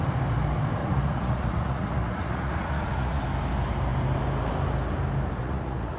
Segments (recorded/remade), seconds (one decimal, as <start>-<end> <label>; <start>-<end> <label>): 0.0-0.8 recorded; 0.8-3.2 remade; 3.2-5.4 recorded; 5.4-6.0 remade